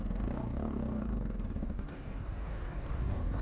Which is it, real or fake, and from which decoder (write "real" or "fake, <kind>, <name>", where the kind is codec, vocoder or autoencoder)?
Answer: fake, codec, DAC